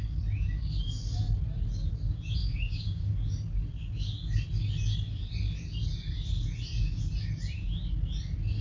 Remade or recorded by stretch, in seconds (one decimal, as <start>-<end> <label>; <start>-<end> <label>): 0.0-2.4 recorded; 2.4-3.0 remade; 3.0-8.6 recorded